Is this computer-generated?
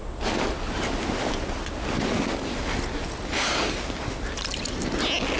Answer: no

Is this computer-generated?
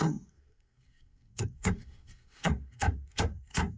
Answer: yes